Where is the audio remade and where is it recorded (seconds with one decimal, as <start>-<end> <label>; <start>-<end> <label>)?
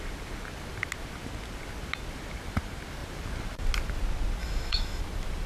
0.0-4.4 recorded; 4.4-5.0 remade; 5.0-5.5 recorded